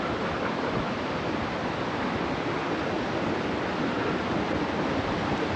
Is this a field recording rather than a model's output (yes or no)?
yes